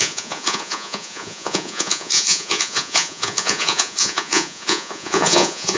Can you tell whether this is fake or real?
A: fake